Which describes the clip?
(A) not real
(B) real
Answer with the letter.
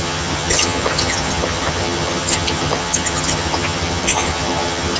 A